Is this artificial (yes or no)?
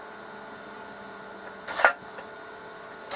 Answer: no